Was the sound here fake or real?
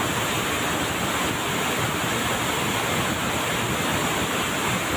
real